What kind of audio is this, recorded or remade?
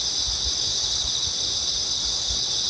recorded